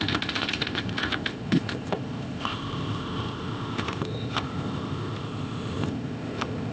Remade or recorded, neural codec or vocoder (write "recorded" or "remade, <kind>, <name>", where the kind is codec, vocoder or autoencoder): remade, codec, ZipCodec